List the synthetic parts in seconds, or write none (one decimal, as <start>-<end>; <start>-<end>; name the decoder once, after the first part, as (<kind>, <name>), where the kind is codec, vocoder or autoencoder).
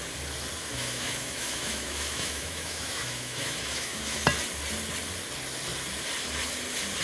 0.7-4.2 (autoencoder, DAC-VAE)